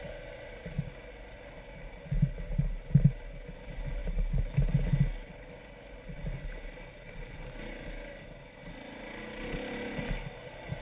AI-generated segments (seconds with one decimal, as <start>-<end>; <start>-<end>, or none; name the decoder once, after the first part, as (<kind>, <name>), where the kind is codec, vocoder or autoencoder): none